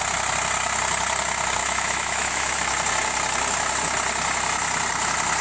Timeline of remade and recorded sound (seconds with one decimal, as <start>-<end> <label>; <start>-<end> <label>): 0.0-1.6 recorded; 1.6-2.6 remade; 2.6-5.4 recorded